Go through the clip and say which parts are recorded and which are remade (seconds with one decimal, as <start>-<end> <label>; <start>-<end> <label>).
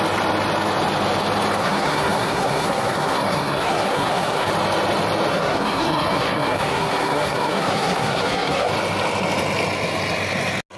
0.0-1.6 recorded; 1.6-4.5 remade; 4.5-5.3 recorded; 5.3-8.7 remade; 8.7-10.8 recorded